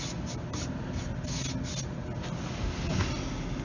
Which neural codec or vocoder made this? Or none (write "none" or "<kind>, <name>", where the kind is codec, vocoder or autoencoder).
none